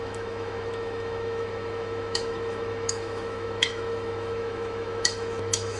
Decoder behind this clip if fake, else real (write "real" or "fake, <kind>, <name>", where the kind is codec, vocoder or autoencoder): fake, autoencoder, DAC-VAE